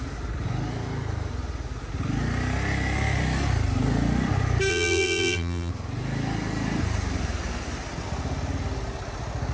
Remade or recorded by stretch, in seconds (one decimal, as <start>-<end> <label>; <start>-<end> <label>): 0.0-4.7 recorded; 4.7-5.7 remade; 5.7-9.5 recorded